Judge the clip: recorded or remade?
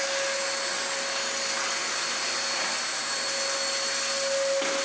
recorded